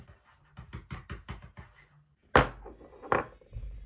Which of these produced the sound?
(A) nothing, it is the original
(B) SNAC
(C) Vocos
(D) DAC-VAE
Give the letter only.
A